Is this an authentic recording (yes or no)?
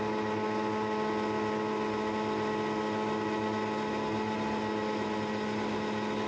yes